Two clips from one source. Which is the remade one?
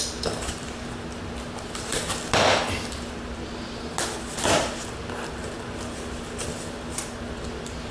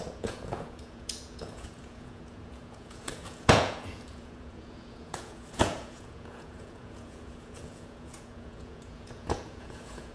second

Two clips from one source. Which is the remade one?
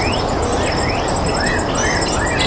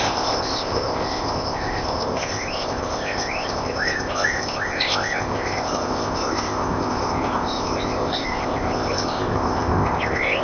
second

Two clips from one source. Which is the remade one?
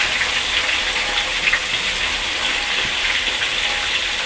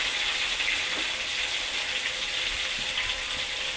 second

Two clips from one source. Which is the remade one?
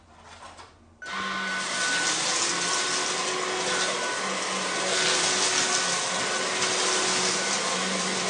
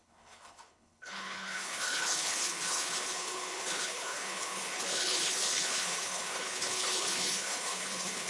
second